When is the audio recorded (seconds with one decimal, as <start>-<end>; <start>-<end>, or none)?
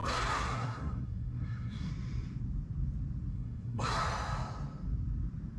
1.9-3.3; 4.0-5.6